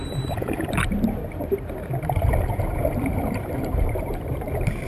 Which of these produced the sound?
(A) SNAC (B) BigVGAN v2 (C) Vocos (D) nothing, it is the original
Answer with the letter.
B